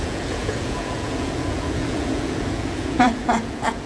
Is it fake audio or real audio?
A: fake